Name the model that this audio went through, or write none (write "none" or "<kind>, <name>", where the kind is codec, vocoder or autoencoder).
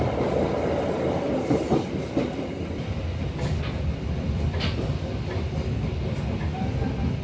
none